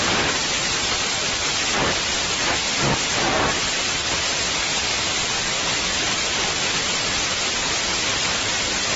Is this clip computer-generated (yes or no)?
yes